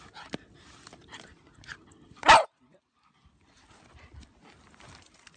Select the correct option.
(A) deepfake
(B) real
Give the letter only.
B